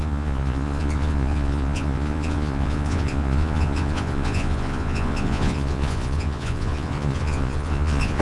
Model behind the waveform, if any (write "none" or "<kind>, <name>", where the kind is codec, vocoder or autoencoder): vocoder, Vocos